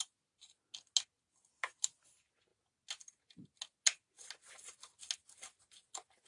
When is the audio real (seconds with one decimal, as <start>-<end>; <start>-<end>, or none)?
0.0-6.3